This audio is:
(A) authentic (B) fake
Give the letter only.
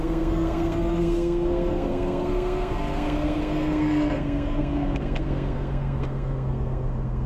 B